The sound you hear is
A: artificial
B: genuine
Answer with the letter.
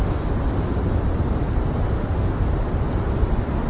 B